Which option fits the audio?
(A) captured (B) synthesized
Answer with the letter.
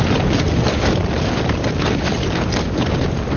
B